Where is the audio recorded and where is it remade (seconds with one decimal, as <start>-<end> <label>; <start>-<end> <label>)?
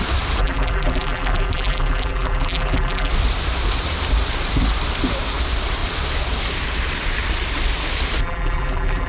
0.0-0.4 recorded; 0.4-3.1 remade; 3.1-8.2 recorded; 8.2-9.1 remade